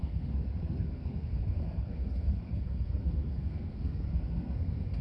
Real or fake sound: fake